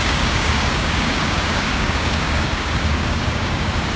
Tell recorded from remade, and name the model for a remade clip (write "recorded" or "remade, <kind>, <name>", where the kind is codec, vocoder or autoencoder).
remade, codec, DAC